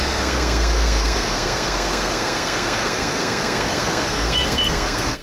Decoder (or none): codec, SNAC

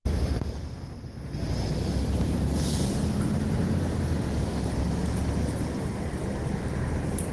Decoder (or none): none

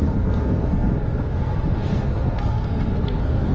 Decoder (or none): codec, SNAC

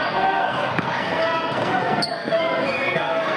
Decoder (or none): codec, SNAC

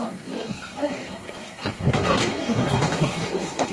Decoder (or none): codec, SNAC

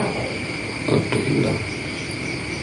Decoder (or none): none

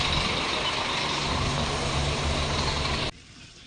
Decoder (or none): none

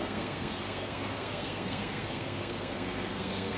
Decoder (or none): codec, SNAC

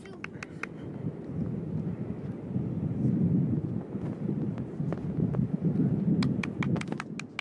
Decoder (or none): none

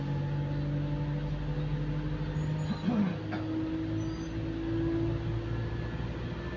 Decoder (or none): none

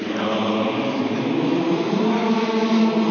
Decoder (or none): none